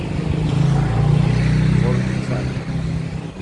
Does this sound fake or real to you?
real